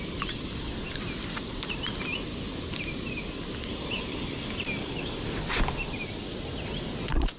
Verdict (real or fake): real